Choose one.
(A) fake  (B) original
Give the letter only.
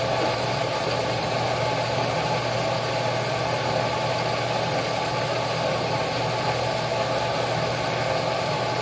B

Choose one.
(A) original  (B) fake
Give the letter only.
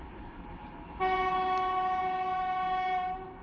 A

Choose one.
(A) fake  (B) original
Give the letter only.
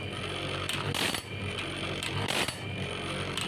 B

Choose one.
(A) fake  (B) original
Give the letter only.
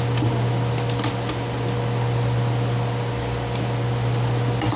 B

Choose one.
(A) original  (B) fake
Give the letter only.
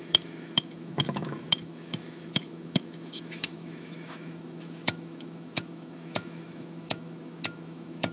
B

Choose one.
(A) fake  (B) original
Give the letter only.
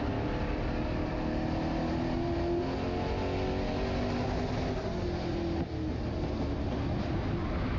B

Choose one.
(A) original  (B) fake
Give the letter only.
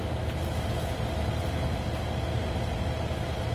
A